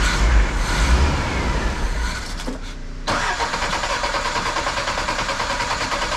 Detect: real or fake fake